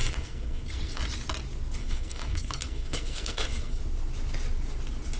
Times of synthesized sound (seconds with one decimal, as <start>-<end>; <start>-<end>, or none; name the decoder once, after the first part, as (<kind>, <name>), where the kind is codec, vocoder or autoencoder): 0.0-1.0 (codec, SNAC); 1.8-3.8